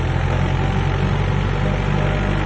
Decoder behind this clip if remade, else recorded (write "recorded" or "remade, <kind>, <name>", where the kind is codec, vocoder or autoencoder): recorded